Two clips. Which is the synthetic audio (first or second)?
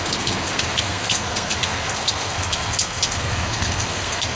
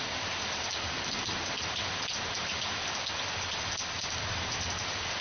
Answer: first